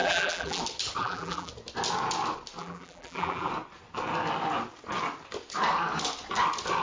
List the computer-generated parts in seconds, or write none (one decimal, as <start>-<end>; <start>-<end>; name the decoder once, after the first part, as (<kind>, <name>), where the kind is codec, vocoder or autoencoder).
0.0-0.6 (vocoder, BigVGAN v2); 1.0-1.5; 2.6-3.5